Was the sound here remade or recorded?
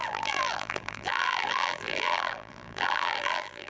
remade